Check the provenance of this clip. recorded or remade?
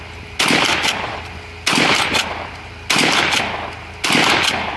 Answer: recorded